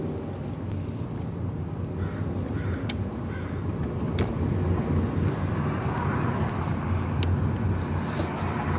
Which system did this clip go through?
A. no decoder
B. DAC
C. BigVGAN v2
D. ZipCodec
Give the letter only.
A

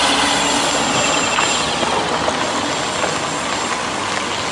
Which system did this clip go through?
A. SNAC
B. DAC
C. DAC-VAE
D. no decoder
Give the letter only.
D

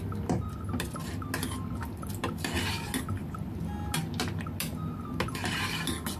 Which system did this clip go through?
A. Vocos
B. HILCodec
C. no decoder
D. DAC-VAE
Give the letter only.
C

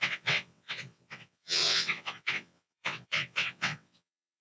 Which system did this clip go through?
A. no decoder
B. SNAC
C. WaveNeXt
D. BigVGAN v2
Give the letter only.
C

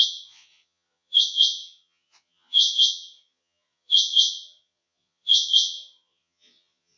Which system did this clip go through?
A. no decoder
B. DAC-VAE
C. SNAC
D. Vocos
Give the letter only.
D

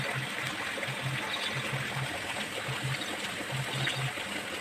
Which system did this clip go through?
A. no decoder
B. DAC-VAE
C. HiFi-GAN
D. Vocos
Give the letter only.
A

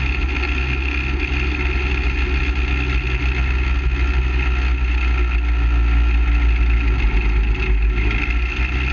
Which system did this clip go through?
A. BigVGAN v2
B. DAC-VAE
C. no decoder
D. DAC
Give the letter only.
C